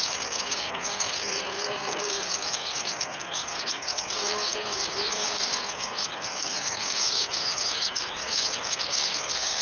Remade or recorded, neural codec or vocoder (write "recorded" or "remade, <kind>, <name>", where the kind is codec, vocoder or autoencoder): remade, codec, SNAC